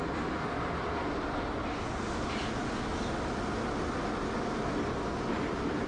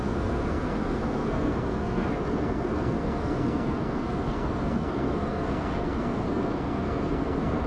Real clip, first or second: first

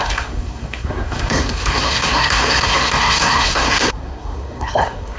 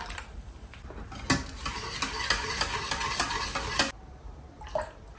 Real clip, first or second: second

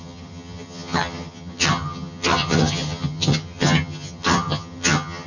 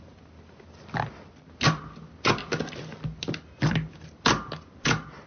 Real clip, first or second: second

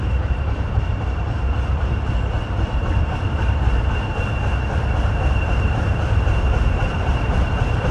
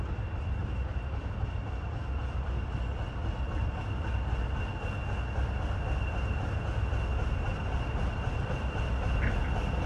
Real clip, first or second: second